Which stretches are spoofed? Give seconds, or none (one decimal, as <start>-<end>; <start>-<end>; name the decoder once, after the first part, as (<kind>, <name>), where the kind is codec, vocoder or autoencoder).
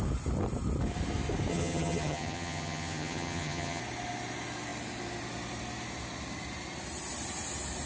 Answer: 1.5-3.8 (vocoder, HiFi-GAN)